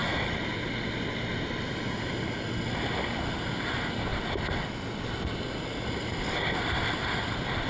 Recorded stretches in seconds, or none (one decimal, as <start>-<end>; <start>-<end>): 0.0-3.4; 4.1-6.6